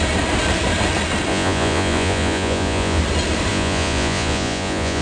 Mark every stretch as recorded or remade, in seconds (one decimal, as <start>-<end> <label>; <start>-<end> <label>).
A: 0.0-1.3 recorded; 1.3-3.0 remade; 3.0-3.5 recorded; 3.5-5.0 remade